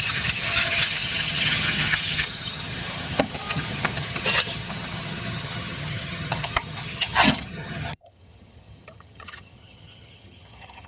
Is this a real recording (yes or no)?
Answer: no